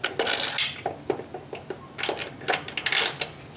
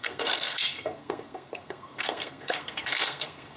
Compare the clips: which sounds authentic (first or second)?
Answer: first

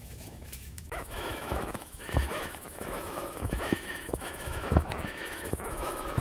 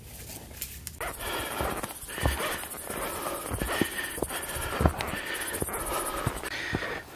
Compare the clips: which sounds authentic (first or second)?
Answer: second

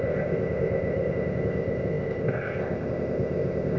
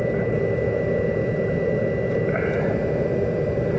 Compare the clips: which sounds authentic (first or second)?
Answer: second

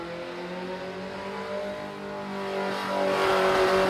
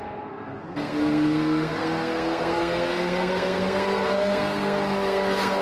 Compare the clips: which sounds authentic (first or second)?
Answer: first